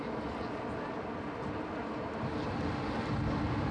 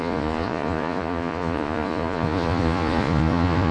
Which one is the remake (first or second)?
second